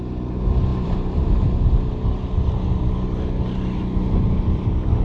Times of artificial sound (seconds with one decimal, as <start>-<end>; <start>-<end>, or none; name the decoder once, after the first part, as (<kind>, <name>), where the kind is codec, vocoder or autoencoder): 0.7-1.5 (vocoder, BigVGAN v2)